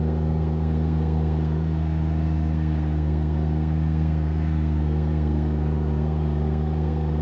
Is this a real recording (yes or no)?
no